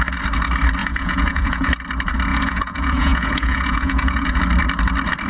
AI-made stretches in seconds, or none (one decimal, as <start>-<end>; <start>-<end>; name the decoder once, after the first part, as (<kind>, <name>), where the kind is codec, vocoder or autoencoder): 0.8-1.7 (vocoder, Vocos); 2.3-4.4